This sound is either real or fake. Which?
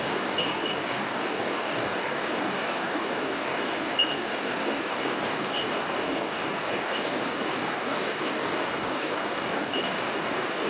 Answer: fake